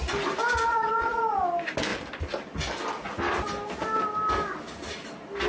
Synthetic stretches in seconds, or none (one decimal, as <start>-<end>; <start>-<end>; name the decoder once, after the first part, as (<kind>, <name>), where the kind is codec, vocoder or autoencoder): 0.7-1.2 (vocoder, Vocos)